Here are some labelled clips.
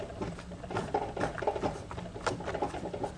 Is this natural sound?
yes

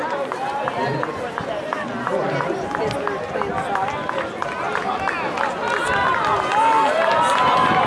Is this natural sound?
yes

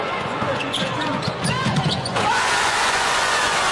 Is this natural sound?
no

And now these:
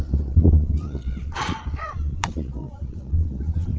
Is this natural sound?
no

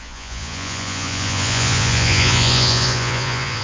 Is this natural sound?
no